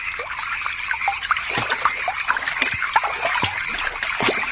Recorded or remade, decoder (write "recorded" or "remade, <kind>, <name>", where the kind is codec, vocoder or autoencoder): recorded